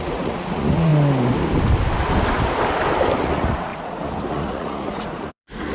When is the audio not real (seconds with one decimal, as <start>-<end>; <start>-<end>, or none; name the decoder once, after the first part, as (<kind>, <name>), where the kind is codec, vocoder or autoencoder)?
0.0-0.9 (vocoder, Vocos); 3.2-5.7

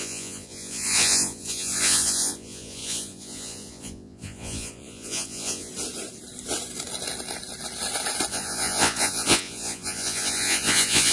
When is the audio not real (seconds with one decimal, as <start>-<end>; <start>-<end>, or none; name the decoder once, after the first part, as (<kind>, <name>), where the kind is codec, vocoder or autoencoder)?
0.0-5.7 (vocoder, Vocos); 8.3-11.1

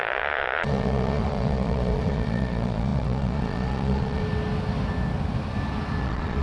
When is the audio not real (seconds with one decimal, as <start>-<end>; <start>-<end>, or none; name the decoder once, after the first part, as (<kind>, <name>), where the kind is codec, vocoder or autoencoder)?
0.0-4.2 (vocoder, Vocos); 6.0-6.4

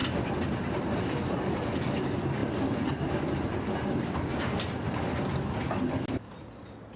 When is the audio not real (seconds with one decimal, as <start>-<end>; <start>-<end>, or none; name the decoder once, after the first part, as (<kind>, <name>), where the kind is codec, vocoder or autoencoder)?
none

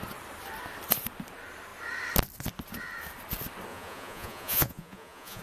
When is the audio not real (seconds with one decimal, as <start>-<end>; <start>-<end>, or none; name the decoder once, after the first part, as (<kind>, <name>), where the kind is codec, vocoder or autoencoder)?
3.7-5.4 (vocoder, Vocos)

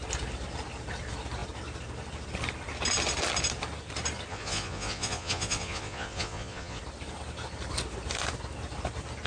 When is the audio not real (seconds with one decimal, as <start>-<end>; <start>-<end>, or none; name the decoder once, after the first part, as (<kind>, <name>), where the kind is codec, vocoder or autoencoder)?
4.3-6.8 (vocoder, Vocos)

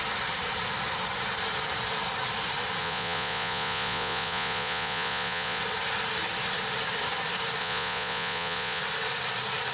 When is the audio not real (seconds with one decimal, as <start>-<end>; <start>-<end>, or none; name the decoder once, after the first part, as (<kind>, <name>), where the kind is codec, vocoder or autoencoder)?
2.8-5.6 (vocoder, Vocos); 7.6-8.8

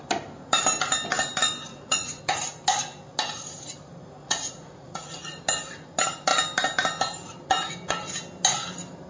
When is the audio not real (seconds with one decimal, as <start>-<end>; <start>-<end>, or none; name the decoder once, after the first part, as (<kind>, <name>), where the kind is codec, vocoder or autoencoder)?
1.7-2.2 (vocoder, Vocos); 4.2-5.4